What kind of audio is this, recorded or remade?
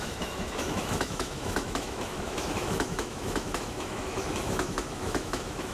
remade